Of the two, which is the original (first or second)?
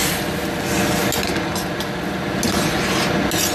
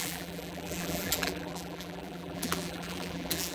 first